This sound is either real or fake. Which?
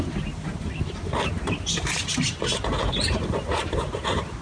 fake